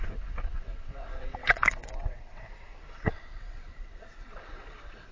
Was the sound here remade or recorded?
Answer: remade